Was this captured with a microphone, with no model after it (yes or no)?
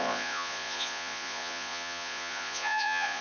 no